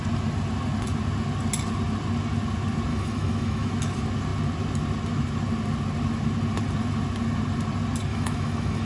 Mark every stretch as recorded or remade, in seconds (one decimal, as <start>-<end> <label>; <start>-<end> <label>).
0.0-2.9 recorded; 2.9-3.7 remade; 3.7-8.1 recorded; 8.1-8.9 remade